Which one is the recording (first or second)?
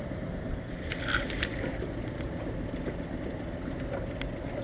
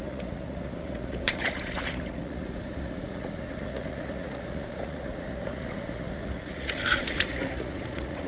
first